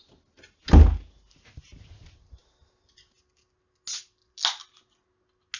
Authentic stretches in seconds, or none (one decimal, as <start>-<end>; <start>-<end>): 0.0-5.6

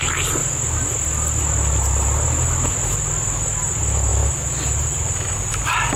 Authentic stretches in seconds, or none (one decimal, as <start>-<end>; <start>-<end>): 0.0-6.0

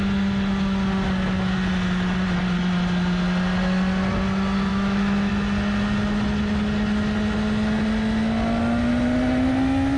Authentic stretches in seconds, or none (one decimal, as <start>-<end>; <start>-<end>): 0.0-4.7; 5.3-10.0

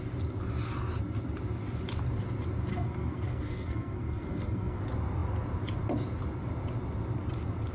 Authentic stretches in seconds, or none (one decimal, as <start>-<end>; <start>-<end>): 0.0-2.7; 4.8-7.7

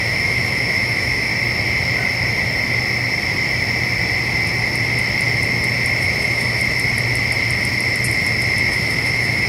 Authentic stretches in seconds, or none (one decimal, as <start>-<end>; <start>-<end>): 1.3-6.0; 6.6-8.7